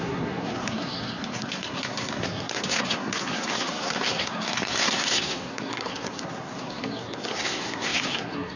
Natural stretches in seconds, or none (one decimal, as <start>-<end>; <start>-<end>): none